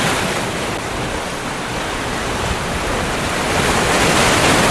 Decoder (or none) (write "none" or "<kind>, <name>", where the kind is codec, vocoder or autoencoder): none